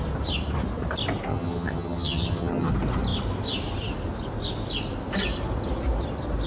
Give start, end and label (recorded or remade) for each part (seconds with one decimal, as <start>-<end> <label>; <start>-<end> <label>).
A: 0.0-1.3 recorded; 1.3-2.7 remade; 2.7-6.5 recorded